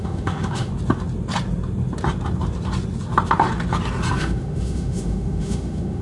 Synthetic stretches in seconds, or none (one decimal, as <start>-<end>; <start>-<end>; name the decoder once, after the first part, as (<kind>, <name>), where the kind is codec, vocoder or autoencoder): 0.0-0.7 (autoencoder, DAC-VAE); 4.1-6.0